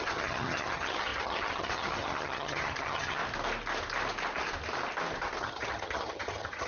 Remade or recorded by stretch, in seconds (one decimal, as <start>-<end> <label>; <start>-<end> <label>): 0.0-3.2 remade; 3.2-5.4 recorded; 5.4-6.7 remade